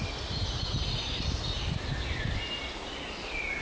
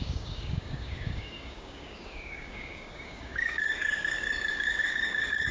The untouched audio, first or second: first